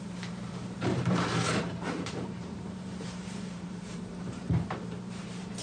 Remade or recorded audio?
remade